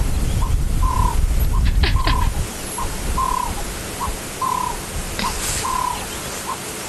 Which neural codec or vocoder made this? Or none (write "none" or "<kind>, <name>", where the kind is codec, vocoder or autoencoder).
none